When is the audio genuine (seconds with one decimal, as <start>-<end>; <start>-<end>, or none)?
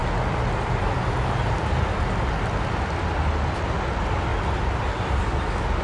3.0-4.3; 5.2-5.8